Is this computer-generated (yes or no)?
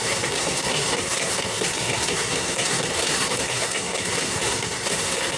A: yes